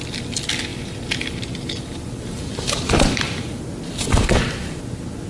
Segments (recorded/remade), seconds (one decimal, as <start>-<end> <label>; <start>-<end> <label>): 0.0-0.7 recorded; 0.7-3.4 remade; 3.4-5.3 recorded